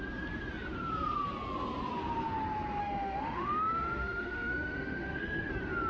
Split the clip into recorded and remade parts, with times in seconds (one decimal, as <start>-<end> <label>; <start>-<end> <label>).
0.0-2.8 recorded; 2.8-5.5 remade; 5.5-5.9 recorded